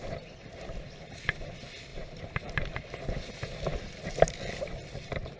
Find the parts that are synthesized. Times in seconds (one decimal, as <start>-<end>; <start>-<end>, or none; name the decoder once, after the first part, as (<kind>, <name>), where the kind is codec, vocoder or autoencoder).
none